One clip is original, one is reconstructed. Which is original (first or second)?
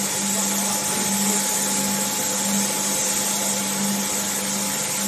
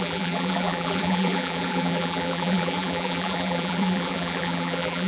first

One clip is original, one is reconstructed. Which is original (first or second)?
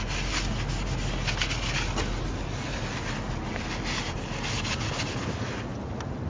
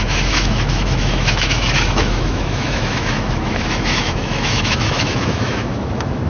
first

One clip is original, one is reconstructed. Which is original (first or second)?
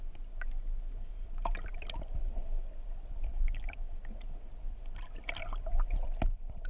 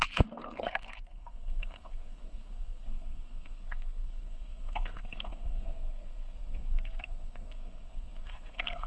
first